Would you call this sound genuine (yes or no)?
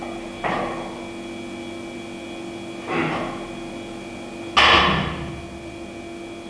yes